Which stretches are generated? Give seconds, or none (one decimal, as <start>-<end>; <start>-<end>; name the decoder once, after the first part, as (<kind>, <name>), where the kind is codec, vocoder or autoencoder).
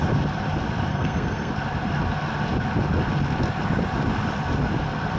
0.9-1.5 (codec, SNAC)